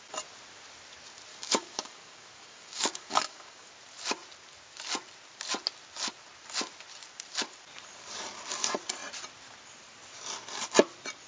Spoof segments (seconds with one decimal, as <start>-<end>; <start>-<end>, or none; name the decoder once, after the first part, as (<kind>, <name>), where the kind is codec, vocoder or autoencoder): 1.3-3.7 (codec, DAC)